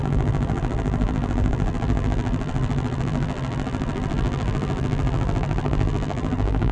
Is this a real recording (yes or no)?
no